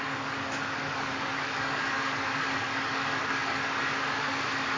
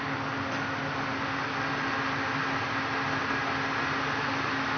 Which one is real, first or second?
second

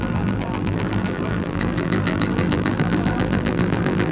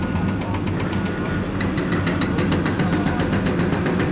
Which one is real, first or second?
second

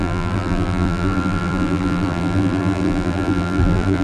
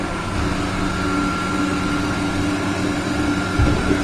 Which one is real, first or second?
second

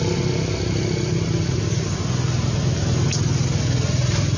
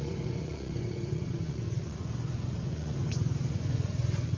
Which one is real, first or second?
first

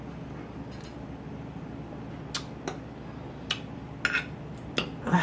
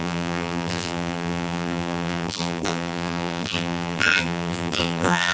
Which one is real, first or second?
first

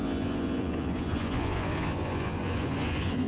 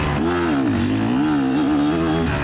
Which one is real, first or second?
second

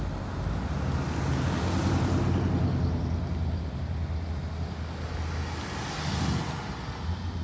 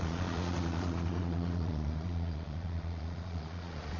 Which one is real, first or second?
first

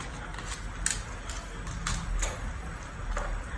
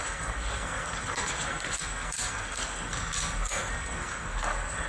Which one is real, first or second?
first